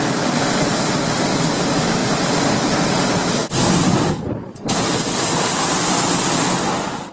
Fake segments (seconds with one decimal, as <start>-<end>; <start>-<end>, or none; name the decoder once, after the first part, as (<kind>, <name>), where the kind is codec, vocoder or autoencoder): 0.0-0.9 (vocoder, BigVGAN v2); 2.0-2.5; 3.4-6.3